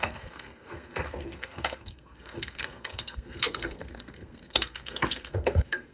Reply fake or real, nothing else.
fake